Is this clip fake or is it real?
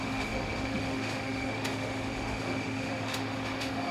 fake